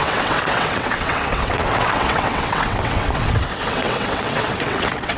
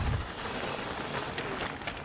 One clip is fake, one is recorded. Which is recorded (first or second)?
second